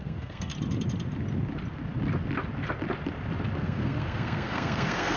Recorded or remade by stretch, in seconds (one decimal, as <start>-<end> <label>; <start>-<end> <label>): 0.0-0.5 remade; 0.5-3.6 recorded; 3.6-5.2 remade